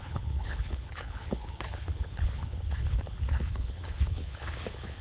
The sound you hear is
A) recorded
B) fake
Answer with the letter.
B